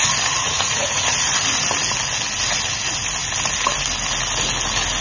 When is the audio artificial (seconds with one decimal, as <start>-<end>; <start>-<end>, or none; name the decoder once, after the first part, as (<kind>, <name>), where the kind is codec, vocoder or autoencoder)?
0.4-1.3 (vocoder, Vocos)